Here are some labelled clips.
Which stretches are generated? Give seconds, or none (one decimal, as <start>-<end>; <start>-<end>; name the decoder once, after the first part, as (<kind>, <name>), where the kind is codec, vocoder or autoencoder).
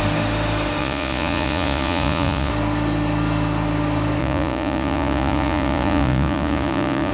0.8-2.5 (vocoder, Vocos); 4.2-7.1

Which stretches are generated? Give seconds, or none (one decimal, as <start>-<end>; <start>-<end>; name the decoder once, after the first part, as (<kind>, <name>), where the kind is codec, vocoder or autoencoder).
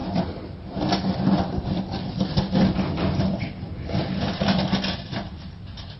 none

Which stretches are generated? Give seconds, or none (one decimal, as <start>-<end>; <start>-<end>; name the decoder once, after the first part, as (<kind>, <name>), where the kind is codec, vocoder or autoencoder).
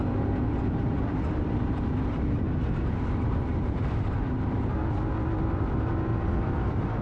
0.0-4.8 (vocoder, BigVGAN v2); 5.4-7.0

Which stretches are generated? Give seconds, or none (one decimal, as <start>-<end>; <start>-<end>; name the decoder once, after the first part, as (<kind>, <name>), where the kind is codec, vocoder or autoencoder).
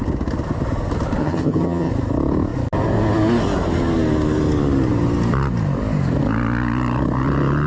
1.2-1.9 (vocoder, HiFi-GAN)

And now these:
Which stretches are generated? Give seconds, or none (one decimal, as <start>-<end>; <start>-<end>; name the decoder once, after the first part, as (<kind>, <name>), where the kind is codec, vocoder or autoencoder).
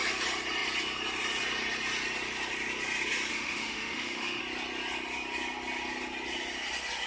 3.3-4.4 (autoencoder, DAC-VAE)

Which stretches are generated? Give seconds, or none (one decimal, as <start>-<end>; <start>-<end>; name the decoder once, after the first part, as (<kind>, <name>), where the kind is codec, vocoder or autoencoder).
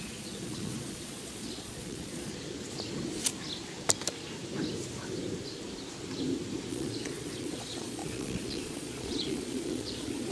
0.0-2.3 (vocoder, Vocos); 6.7-10.3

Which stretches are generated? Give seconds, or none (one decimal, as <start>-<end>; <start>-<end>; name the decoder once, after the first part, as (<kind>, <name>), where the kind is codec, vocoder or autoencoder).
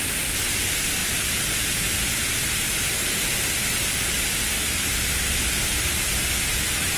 none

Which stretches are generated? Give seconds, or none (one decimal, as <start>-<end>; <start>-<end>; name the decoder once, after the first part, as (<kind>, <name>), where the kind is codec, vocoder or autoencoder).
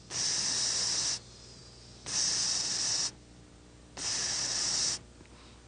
none